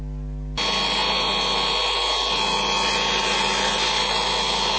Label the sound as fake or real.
real